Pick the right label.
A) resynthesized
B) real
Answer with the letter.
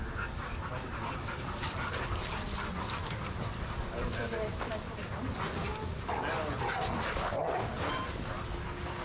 B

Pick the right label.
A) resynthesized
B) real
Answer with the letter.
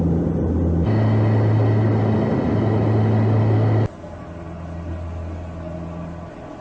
B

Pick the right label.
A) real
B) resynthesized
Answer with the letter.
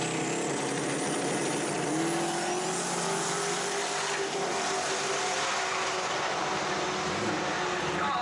A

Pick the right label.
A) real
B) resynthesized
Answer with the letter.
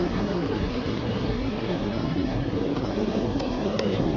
B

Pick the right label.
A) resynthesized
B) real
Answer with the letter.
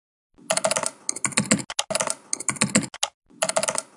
B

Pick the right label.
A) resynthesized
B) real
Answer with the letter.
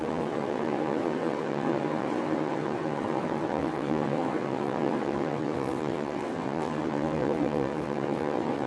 A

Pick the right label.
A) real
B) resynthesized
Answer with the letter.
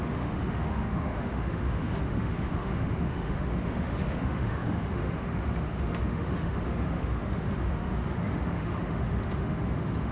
B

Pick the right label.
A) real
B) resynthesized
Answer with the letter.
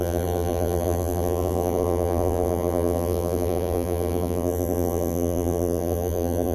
B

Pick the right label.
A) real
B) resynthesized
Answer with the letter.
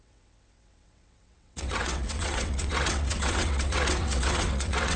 B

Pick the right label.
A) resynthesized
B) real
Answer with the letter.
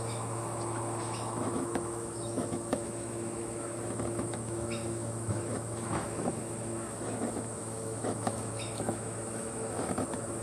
A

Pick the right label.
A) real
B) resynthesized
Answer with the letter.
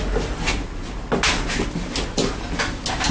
A